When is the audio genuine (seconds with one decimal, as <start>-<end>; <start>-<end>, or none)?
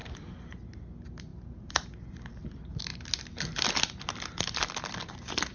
0.5-1.3; 2.3-5.5